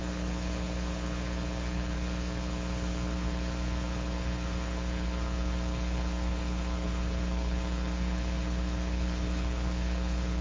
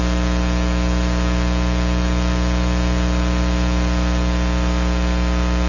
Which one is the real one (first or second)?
second